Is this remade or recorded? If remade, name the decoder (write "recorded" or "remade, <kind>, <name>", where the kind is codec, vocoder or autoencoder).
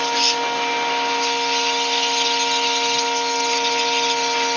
recorded